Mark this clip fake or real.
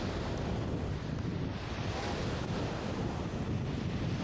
real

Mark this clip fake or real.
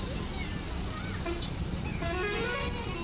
real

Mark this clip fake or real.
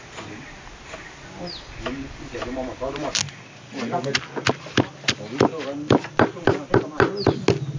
real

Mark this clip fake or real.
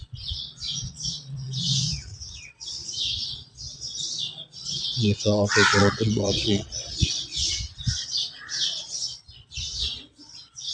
fake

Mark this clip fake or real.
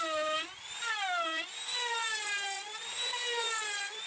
real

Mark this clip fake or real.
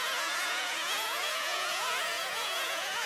fake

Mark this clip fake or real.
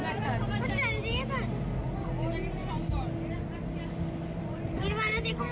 real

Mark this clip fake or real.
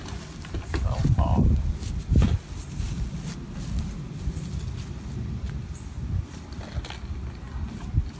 real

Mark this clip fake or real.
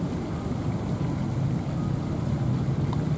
real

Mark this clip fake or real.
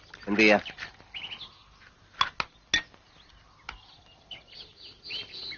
real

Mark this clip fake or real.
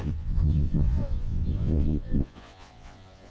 fake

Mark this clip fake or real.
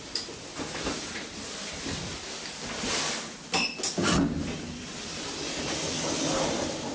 real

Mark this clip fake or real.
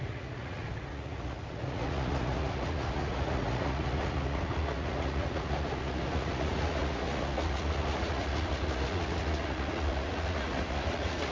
fake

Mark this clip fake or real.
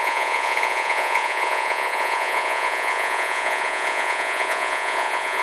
fake